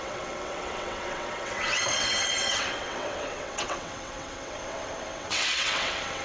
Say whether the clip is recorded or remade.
remade